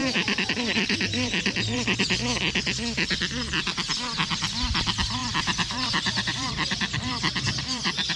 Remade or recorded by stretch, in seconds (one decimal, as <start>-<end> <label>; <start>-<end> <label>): 0.0-2.0 remade; 2.0-5.2 recorded; 5.2-8.2 remade